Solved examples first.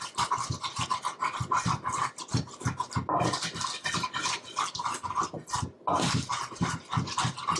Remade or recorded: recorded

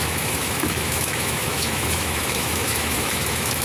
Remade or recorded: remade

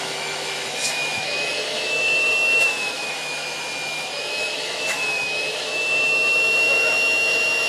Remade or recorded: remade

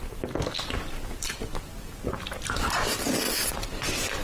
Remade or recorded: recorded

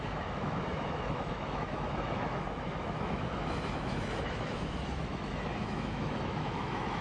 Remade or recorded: remade